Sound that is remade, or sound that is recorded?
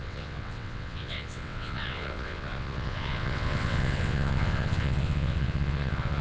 remade